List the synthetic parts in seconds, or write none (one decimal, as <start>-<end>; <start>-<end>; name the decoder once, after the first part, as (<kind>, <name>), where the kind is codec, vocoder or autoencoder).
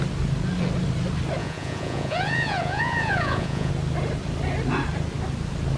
1.4-3.7 (vocoder, Vocos)